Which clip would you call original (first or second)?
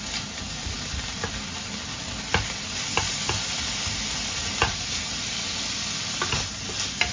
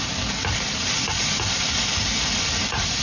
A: first